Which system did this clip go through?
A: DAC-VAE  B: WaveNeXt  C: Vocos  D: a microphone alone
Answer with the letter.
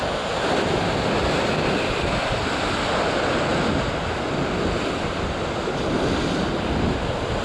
D